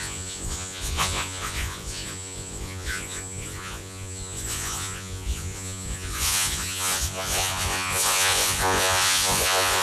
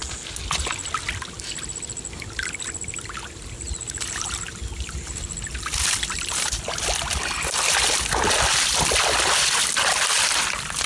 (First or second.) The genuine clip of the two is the second